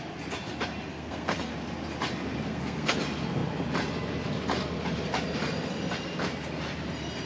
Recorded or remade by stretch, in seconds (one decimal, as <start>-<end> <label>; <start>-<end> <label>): 0.0-0.9 recorded; 0.9-1.5 remade; 1.5-2.5 recorded; 2.5-3.0 remade; 3.0-7.3 recorded